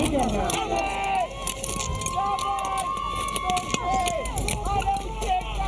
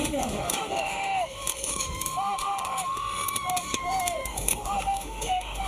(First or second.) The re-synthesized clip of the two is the second